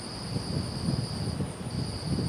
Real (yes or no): yes